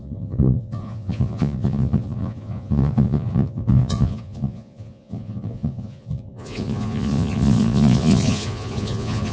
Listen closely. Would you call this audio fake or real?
fake